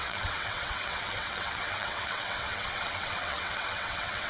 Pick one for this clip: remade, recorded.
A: remade